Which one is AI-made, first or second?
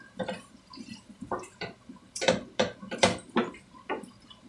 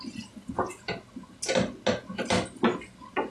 first